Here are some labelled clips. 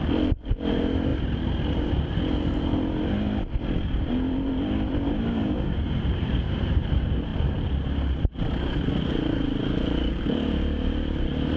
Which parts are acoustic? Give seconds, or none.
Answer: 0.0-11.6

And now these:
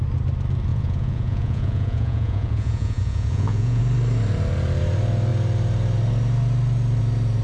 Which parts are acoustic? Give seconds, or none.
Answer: 0.0-0.7; 3.8-7.4

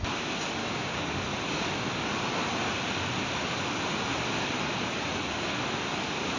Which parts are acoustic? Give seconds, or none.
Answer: 0.0-0.6; 1.1-6.4

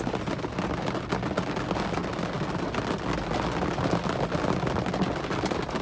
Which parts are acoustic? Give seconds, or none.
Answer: 0.0-5.8

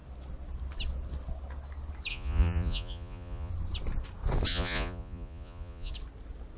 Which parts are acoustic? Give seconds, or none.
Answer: 0.0-2.1; 3.5-4.5; 5.9-6.6